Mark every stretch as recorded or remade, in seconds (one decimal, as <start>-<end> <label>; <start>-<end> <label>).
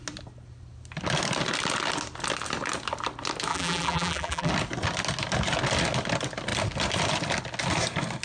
0.0-3.5 recorded; 3.5-4.5 remade; 4.5-8.2 recorded